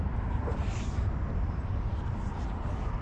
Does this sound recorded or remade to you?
remade